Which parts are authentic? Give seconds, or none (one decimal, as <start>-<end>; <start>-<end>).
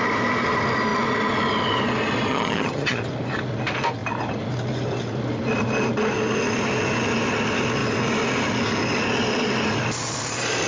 0.0-2.3; 3.0-10.7